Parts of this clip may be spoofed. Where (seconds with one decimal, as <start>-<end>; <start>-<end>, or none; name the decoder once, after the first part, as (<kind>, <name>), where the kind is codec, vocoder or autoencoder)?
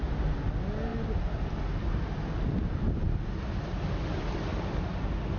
none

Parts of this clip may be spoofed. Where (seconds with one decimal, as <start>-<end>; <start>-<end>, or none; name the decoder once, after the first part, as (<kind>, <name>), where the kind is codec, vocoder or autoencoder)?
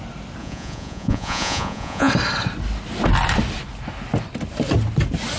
0.4-2.1 (vocoder, Vocos)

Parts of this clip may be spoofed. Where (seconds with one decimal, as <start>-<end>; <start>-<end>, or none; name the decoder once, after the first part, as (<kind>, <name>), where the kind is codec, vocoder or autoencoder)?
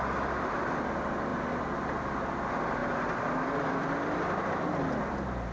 2.8-5.0 (vocoder, BigVGAN v2)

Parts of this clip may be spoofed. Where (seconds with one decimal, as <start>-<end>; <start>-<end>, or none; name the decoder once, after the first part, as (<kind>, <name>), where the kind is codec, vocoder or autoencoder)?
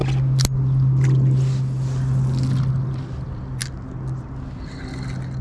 none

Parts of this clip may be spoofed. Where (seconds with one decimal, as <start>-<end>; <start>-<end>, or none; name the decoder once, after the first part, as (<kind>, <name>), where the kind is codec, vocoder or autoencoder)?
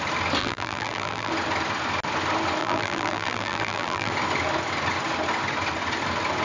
0.4-1.3 (vocoder, BigVGAN v2); 2.6-4.1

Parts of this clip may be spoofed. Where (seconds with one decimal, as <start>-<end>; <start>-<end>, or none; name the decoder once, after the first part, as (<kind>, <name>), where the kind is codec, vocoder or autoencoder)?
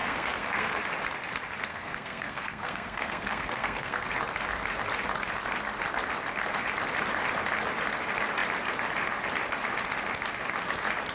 0.0-0.8 (codec, SNAC); 1.7-4.1